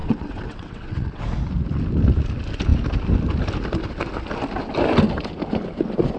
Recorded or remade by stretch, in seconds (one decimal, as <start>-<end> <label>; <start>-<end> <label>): 0.0-1.2 remade; 1.2-6.2 recorded

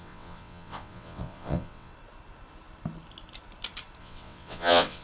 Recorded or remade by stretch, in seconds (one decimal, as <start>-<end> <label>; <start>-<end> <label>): 0.0-1.9 remade; 1.9-4.0 recorded; 4.0-5.0 remade

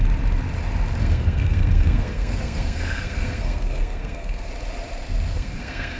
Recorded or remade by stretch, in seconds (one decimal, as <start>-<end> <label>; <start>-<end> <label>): 0.0-1.0 recorded; 1.0-4.5 remade; 4.5-5.3 recorded; 5.3-6.0 remade